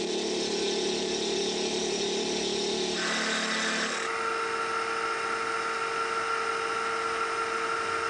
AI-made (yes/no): no